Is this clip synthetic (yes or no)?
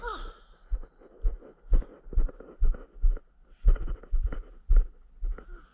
no